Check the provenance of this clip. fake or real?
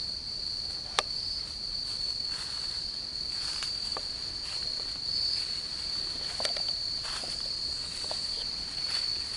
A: fake